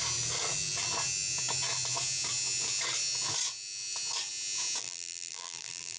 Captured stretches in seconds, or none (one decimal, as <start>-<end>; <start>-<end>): 0.0-4.8